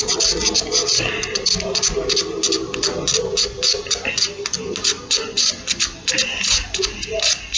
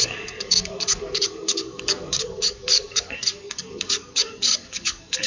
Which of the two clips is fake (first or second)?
second